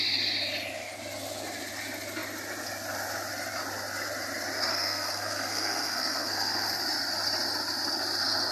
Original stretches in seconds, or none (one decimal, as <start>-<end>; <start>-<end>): 0.0-4.7; 6.8-8.5